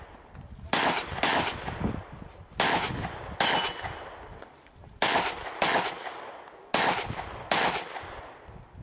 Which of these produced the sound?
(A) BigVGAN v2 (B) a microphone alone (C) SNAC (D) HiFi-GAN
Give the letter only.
B